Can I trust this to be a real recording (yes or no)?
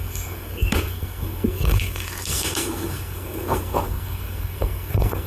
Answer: no